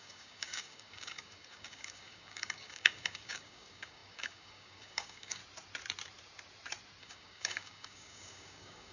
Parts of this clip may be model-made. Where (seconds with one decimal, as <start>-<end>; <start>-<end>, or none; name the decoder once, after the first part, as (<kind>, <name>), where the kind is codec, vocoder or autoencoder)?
0.0-5.4 (codec, DAC); 7.0-8.9